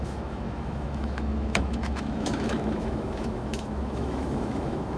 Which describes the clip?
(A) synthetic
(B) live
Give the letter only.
A